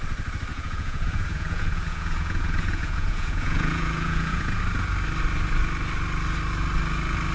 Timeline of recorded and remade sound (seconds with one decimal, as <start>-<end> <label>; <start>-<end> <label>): 0.0-0.5 recorded; 0.5-4.6 remade; 4.6-7.3 recorded